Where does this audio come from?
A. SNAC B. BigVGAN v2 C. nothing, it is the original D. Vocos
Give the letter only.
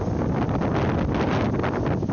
C